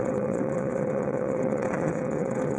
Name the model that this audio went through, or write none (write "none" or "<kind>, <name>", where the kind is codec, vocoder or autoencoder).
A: vocoder, WaveNeXt